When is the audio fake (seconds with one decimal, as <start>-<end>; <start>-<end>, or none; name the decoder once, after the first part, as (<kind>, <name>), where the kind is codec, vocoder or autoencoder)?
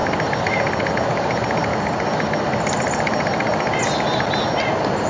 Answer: 0.9-1.7 (vocoder, BigVGAN v2)